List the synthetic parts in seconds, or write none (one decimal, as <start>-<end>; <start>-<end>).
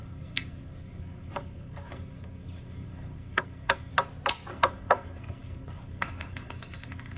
0.0-3.9; 4.5-7.2